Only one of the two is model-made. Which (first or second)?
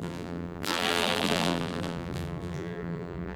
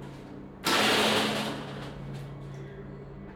first